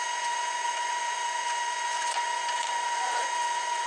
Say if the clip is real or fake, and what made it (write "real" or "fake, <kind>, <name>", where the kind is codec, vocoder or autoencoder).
fake, vocoder, Vocos